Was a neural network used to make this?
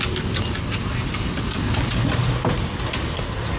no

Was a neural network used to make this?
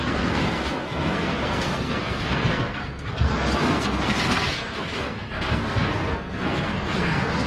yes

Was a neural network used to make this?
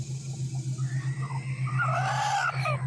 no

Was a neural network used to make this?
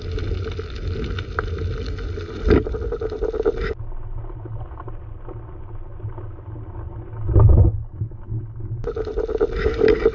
no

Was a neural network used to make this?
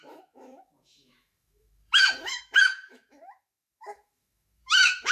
yes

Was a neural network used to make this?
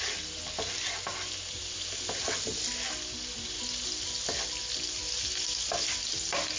no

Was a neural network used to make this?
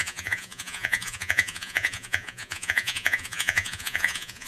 yes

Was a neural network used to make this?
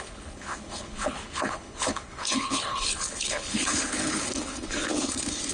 yes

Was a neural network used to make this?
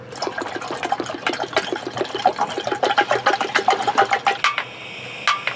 no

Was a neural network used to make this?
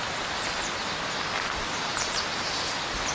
no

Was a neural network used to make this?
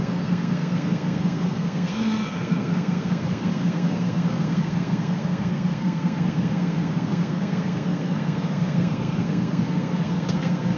yes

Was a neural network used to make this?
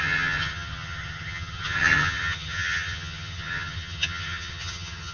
yes